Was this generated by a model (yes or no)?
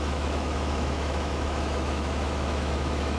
yes